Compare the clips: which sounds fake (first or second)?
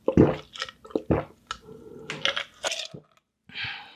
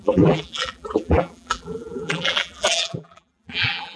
second